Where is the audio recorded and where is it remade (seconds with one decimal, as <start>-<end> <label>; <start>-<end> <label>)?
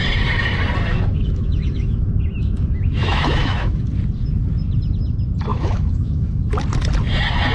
0.0-0.9 recorded; 0.9-3.9 remade; 3.9-5.5 recorded; 5.5-6.5 remade; 6.5-7.5 recorded